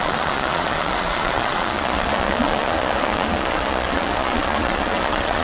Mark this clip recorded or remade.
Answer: remade